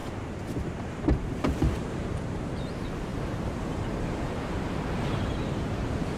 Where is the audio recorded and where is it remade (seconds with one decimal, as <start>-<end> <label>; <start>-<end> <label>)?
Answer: 0.0-1.0 recorded; 1.0-6.2 remade